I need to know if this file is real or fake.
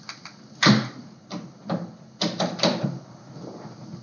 real